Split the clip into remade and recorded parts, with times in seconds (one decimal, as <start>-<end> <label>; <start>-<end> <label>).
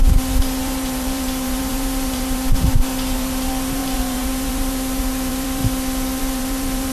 0.0-5.6 remade; 5.6-6.2 recorded; 6.2-6.9 remade